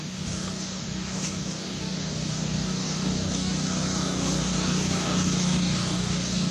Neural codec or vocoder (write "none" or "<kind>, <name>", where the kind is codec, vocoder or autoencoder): codec, DAC